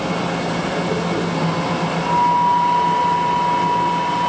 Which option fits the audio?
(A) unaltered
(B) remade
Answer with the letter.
A